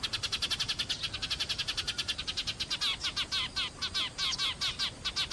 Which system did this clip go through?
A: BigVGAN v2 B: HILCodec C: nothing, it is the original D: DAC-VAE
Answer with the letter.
C